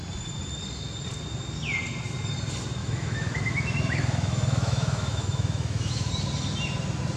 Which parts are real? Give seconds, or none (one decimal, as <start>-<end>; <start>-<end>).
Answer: 0.0-2.8; 6.1-7.2